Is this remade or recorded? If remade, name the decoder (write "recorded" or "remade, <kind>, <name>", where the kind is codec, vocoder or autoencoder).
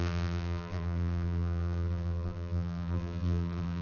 remade, vocoder, BigVGAN v2